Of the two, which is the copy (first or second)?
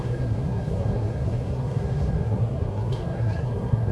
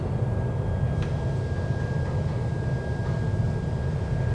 first